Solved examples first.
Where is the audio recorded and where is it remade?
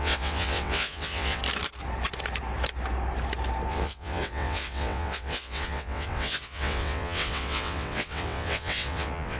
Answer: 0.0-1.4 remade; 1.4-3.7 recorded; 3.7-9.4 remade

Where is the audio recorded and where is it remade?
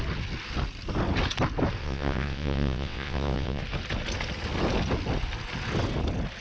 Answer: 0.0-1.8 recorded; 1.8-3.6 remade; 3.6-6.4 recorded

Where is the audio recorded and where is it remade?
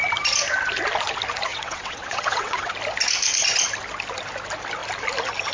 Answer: 0.0-1.5 recorded; 1.5-2.7 remade; 2.7-5.5 recorded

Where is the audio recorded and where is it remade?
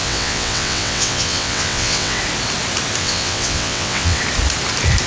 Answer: 0.0-2.2 remade; 2.2-3.0 recorded; 3.0-4.2 remade; 4.2-5.1 recorded